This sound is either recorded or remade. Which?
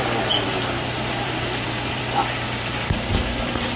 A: remade